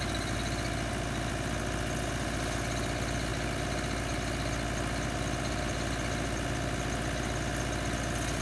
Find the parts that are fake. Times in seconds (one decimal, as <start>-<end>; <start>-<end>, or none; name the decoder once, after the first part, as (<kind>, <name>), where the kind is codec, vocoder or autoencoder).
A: none